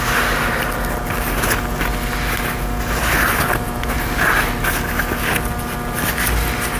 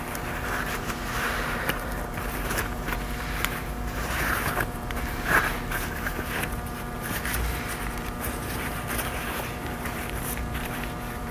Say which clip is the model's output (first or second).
second